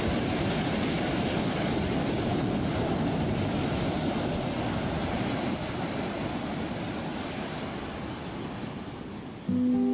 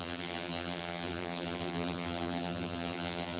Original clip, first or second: first